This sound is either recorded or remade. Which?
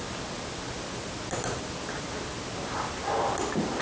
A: recorded